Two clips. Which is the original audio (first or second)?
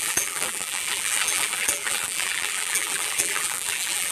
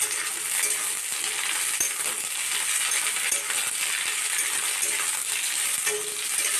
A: second